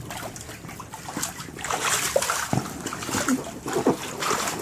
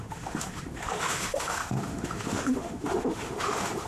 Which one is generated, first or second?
second